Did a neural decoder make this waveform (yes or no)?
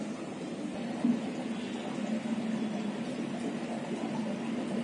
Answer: no